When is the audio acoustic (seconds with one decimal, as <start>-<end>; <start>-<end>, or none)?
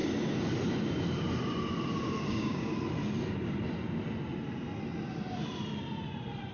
0.0-2.3; 2.7-6.5